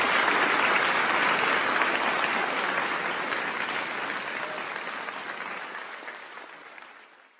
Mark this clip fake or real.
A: real